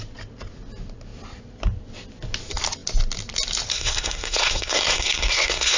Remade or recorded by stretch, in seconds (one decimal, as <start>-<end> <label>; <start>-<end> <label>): 0.0-3.7 recorded; 3.7-5.8 remade